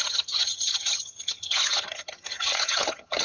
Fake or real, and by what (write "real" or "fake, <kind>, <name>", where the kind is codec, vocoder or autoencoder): fake, vocoder, HiFi-GAN